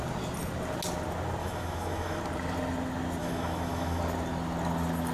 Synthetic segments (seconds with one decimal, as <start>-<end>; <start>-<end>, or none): 1.4-2.2; 3.2-4.0